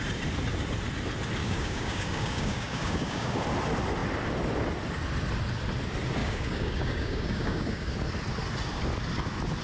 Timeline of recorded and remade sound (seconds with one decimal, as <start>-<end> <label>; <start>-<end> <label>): 0.0-1.4 recorded; 1.4-3.4 remade; 3.4-6.2 recorded; 6.2-7.9 remade; 7.9-9.6 recorded